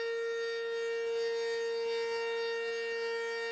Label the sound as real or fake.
real